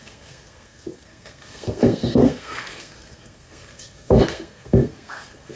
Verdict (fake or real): fake